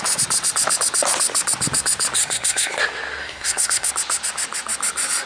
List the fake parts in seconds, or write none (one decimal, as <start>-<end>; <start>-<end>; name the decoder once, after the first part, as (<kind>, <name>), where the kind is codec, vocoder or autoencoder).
2.2-2.8 (codec, SNAC); 3.2-3.9